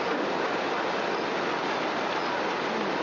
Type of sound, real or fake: real